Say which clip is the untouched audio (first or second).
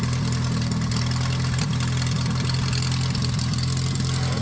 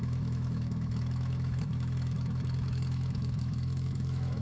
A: first